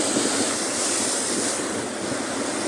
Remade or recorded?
recorded